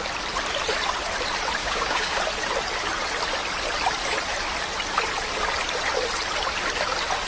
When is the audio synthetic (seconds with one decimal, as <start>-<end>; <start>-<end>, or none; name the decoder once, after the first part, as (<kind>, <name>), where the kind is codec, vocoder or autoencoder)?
1.6-2.2 (codec, DAC)